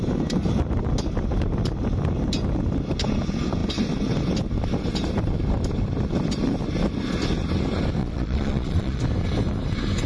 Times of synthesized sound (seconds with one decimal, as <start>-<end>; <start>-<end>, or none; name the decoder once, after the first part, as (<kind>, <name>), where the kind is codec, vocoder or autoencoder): 8.0-9.0 (vocoder, Vocos)